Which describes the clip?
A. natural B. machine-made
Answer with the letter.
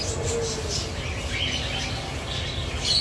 A